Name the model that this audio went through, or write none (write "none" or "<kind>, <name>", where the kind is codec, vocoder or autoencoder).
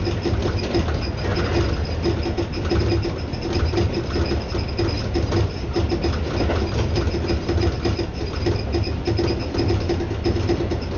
none